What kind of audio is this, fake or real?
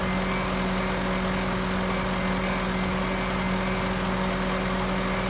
real